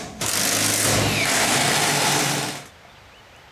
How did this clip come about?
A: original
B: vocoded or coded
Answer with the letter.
A